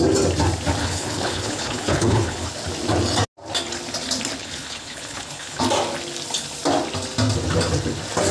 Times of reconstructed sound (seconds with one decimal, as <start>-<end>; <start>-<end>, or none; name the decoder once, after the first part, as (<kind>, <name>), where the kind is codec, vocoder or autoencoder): 0.8-2.5 (codec, HILCodec); 4.4-5.6